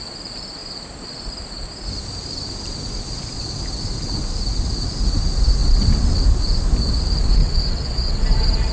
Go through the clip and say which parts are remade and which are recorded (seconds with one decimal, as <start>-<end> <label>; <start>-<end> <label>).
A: 0.0-5.6 recorded; 5.6-6.2 remade; 6.2-7.4 recorded; 7.4-8.2 remade; 8.2-8.7 recorded